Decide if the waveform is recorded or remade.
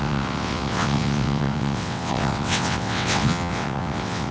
remade